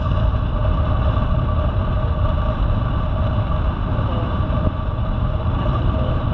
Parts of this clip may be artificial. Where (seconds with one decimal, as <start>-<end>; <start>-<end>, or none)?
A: 0.0-0.6; 1.1-1.8; 5.6-6.3